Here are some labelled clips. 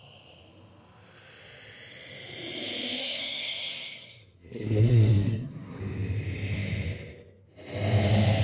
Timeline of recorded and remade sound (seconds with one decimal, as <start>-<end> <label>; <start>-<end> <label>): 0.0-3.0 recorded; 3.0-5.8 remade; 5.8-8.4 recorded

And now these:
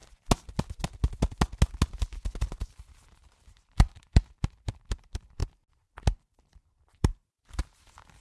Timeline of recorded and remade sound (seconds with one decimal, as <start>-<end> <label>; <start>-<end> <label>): 0.0-2.4 recorded; 2.4-5.4 remade; 5.4-6.4 recorded; 6.4-8.2 remade

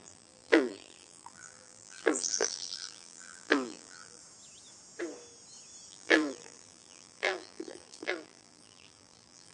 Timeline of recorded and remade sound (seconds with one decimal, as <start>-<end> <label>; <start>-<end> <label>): 0.0-4.2 remade; 4.2-5.9 recorded; 5.9-9.5 remade

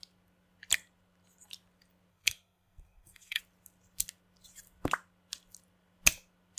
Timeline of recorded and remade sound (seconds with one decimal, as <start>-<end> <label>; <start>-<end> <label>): 0.0-2.1 recorded; 2.1-3.4 remade; 3.4-6.6 recorded

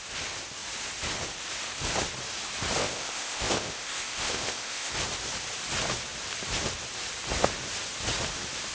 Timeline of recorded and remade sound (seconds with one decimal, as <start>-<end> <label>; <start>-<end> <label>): 0.0-2.8 recorded; 2.8-4.9 remade; 4.9-8.7 recorded